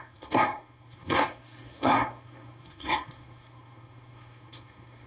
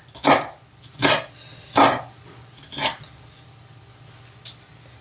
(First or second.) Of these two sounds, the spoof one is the first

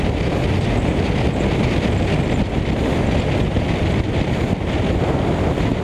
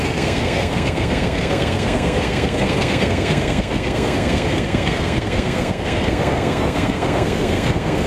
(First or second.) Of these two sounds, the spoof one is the second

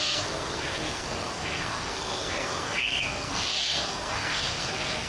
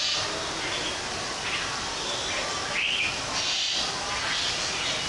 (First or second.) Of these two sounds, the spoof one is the first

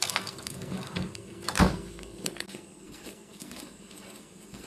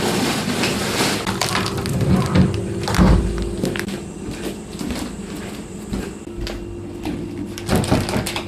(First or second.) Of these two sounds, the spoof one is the first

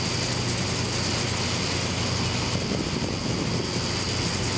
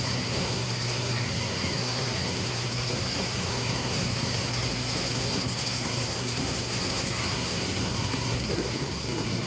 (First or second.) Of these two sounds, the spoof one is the second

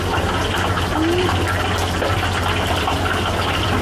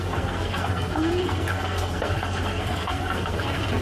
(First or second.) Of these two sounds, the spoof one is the second